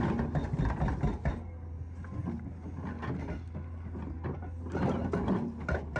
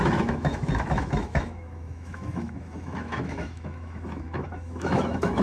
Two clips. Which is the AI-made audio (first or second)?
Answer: second